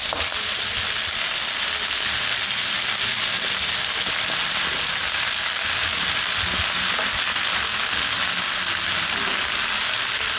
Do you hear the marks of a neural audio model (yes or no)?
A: no